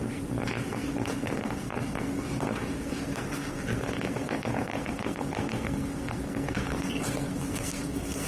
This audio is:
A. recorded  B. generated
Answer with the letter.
B